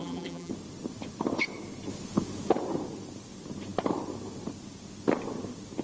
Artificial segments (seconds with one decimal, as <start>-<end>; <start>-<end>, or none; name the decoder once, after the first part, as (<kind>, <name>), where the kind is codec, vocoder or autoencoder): 0.0-0.5 (vocoder, BigVGAN v2)